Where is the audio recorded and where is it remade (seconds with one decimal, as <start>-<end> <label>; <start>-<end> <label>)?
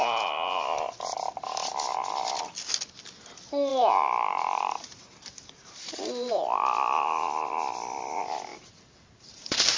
0.0-3.7 recorded; 3.7-6.3 remade; 6.3-8.5 recorded; 8.5-9.8 remade